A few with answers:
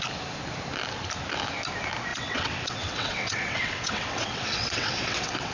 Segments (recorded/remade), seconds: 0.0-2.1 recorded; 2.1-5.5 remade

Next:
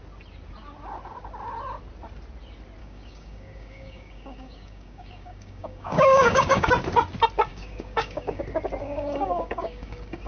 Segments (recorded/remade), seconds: 0.0-2.8 recorded; 2.8-6.7 remade; 6.7-7.5 recorded; 7.5-8.4 remade; 8.4-8.8 recorded; 8.8-10.3 remade

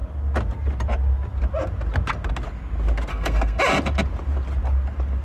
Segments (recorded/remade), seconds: 0.0-3.1 recorded; 3.1-3.6 remade; 3.6-5.2 recorded

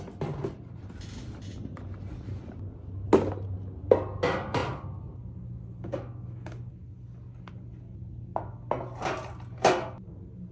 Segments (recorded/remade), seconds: 0.0-10.5 recorded

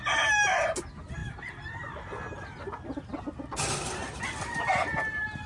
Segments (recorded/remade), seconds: 0.0-5.5 recorded

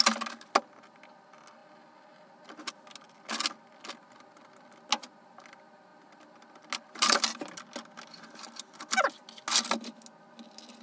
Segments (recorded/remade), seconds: 0.0-10.8 recorded

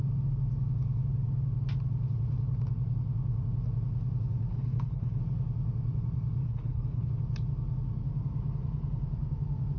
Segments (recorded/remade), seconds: 0.0-4.5 recorded; 4.5-5.2 remade; 5.2-6.4 recorded; 6.4-7.1 remade; 7.1-9.8 recorded

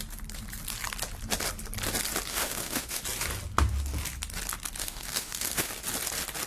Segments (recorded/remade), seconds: 0.0-2.3 recorded; 2.3-3.0 remade; 3.0-4.8 recorded; 4.8-5.7 remade; 5.7-6.5 recorded